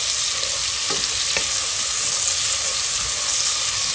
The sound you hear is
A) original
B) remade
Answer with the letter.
A